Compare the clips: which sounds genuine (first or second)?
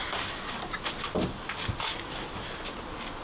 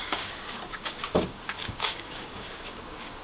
first